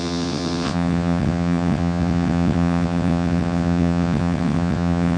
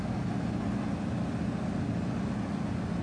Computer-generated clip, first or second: first